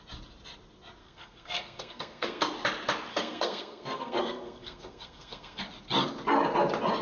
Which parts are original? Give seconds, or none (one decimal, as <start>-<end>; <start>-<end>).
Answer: 0.0-1.0; 2.4-3.1; 5.6-7.0